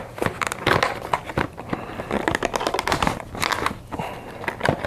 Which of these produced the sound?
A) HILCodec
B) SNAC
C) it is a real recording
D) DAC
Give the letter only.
C